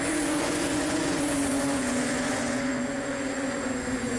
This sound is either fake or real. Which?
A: fake